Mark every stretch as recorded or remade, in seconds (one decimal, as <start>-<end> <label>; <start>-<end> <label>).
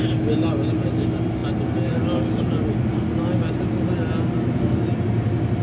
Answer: 0.0-5.6 recorded